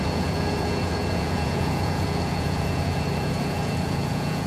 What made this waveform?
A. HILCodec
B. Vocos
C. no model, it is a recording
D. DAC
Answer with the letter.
B